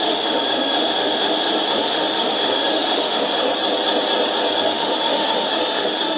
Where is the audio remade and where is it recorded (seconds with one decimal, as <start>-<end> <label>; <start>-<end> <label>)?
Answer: 0.0-3.5 remade; 3.5-4.6 recorded; 4.6-6.2 remade